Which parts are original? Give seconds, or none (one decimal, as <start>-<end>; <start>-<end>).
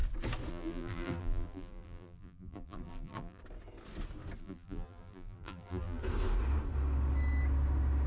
0.0-0.5; 3.4-4.4; 6.0-8.1